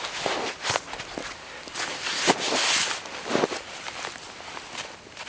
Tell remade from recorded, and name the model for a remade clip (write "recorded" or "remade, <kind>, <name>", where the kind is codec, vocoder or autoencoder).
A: recorded